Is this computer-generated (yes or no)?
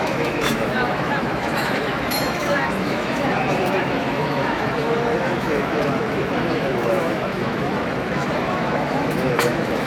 yes